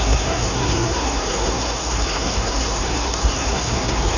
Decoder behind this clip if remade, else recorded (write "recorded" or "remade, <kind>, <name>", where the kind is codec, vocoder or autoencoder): remade, codec, SNAC